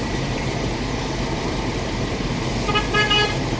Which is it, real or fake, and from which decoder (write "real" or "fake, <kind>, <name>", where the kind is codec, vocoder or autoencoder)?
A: fake, vocoder, BigVGAN v2